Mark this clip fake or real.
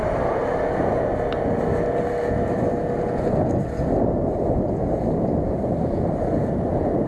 real